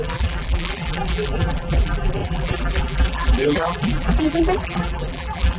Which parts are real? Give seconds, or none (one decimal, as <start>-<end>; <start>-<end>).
none